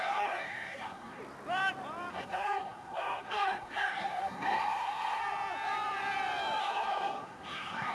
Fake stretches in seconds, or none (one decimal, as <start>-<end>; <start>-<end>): 0.0-1.2; 2.1-5.2; 6.6-7.9